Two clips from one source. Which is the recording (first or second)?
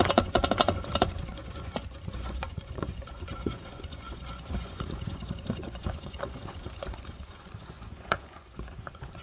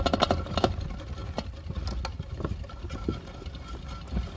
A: second